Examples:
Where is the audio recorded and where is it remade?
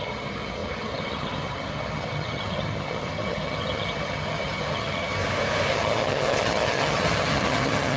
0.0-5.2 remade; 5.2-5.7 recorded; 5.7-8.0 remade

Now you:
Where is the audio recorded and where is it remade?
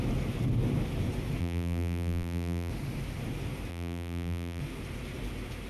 0.0-1.4 recorded; 1.4-2.7 remade; 2.7-3.7 recorded; 3.7-4.6 remade; 4.6-5.7 recorded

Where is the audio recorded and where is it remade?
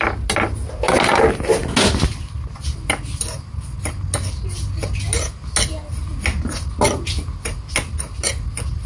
0.0-8.9 recorded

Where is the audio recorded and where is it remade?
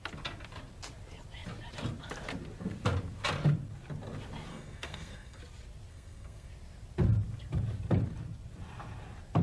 0.0-4.5 recorded; 4.5-5.4 remade; 5.4-5.9 recorded; 5.9-6.5 remade; 6.5-9.4 recorded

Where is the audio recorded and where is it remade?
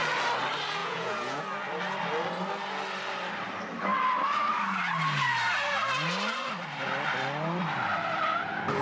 0.0-0.8 recorded; 0.8-1.4 remade; 1.4-8.8 recorded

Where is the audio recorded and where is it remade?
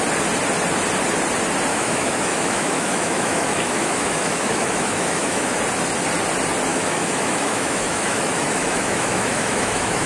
0.0-1.7 recorded; 1.7-5.6 remade; 5.6-6.7 recorded; 6.7-10.1 remade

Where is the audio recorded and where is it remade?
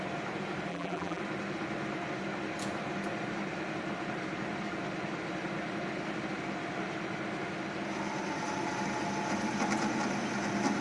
0.0-0.7 recorded; 0.7-1.2 remade; 1.2-10.8 recorded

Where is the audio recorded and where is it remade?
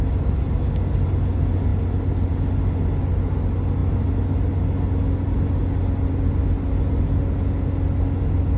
0.0-8.6 recorded